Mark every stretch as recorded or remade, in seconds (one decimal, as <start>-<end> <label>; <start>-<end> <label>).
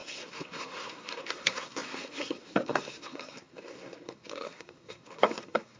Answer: 0.0-5.8 remade